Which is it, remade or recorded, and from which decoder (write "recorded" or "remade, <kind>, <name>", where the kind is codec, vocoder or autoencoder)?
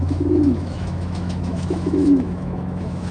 remade, autoencoder, DAC-VAE